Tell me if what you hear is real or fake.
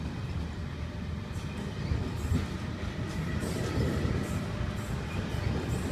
real